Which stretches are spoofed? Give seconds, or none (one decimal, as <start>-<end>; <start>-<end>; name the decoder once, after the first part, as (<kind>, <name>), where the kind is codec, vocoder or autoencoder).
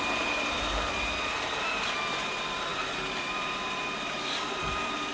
0.0-5.1 (vocoder, BigVGAN v2)